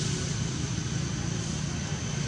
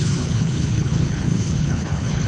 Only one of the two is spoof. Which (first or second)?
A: second